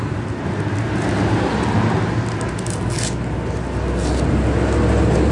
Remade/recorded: recorded